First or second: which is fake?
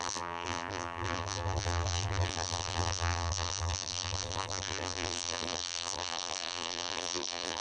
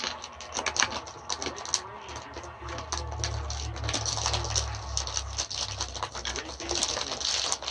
first